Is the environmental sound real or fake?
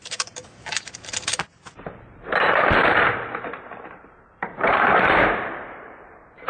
fake